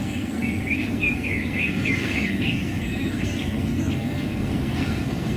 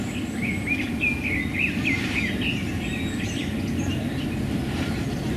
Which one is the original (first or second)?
second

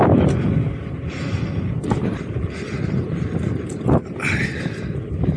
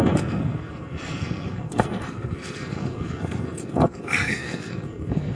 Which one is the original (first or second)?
first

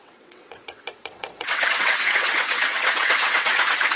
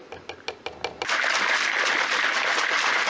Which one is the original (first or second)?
second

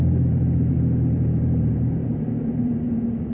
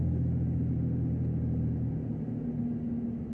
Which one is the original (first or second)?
second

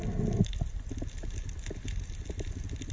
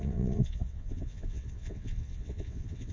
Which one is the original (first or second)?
first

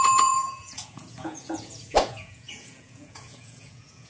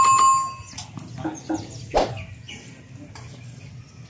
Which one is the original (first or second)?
second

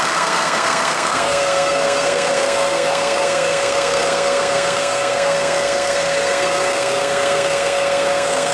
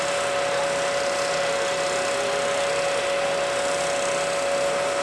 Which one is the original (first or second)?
second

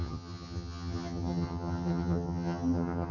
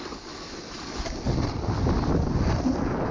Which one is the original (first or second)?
second